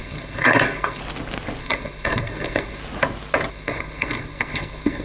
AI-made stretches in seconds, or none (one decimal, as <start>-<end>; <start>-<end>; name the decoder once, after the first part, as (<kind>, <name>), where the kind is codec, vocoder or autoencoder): 0.0-1.0 (codec, SNAC); 1.6-2.8; 3.5-5.0